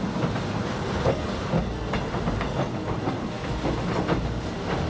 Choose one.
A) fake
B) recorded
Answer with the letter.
B